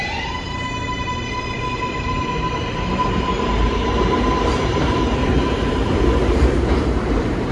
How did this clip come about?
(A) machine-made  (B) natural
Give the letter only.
A